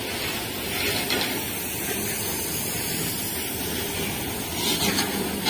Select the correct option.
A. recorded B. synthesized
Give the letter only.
A